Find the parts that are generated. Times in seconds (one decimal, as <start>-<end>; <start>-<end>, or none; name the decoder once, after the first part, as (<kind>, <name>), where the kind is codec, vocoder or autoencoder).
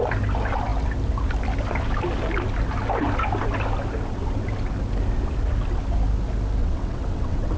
6.6-7.6 (vocoder, WaveNeXt)